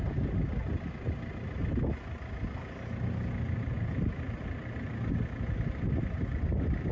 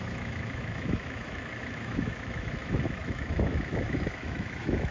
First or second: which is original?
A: first